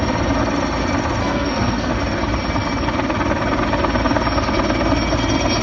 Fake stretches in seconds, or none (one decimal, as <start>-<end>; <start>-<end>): 1.2-1.9